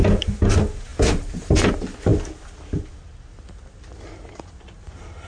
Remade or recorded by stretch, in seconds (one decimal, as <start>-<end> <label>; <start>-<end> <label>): 0.0-0.9 recorded; 0.9-1.7 remade; 1.7-5.3 recorded